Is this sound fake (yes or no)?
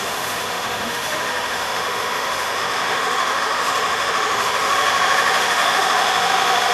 yes